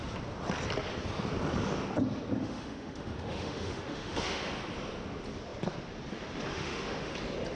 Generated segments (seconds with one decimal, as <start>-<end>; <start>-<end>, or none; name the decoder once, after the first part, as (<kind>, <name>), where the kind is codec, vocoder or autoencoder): 2.4-4.4 (autoencoder, DAC-VAE); 6.5-7.1